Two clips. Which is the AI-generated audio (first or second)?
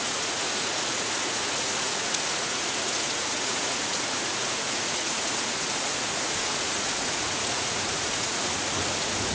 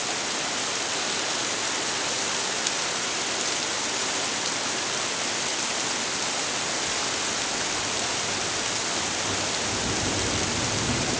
first